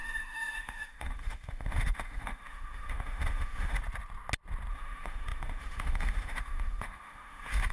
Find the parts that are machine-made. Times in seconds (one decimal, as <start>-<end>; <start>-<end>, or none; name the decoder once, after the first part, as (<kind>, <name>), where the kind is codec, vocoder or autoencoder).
0.0-3.8 (autoencoder, DAC-VAE); 4.7-7.7